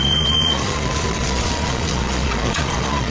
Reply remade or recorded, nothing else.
remade